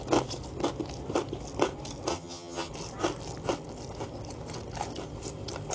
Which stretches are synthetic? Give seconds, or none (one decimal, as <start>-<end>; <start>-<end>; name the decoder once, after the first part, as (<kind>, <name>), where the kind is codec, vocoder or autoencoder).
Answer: 2.1-2.7 (vocoder, HiFi-GAN)